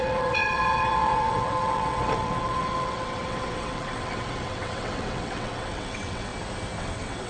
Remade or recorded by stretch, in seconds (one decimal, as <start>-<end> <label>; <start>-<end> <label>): 0.0-6.3 remade; 6.3-6.8 recorded; 6.8-7.3 remade